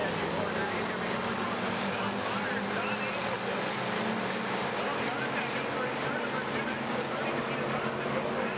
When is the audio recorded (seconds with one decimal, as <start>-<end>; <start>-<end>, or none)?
0.0-8.6